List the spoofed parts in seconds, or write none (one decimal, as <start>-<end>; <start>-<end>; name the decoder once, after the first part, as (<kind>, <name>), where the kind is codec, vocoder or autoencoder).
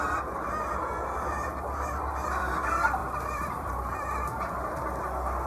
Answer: 3.0-5.0 (vocoder, BigVGAN v2)